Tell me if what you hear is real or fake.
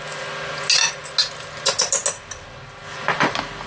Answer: real